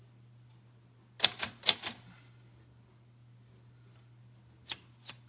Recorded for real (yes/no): yes